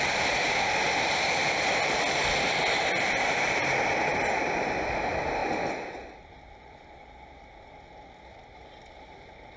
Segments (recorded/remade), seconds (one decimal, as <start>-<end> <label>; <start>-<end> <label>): 0.0-9.6 recorded